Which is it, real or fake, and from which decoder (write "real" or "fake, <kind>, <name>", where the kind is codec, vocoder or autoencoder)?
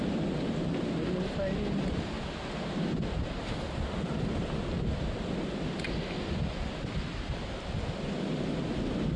real